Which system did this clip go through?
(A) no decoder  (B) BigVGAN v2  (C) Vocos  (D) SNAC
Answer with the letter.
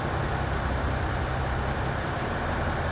A